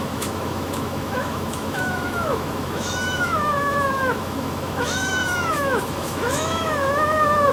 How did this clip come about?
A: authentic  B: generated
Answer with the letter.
B